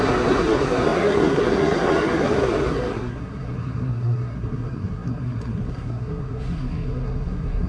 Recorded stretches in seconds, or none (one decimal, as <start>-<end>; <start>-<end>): none